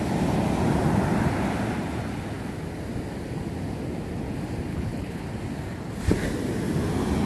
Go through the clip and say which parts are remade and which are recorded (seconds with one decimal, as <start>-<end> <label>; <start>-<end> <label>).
0.0-4.7 recorded; 4.7-5.2 remade; 5.2-7.3 recorded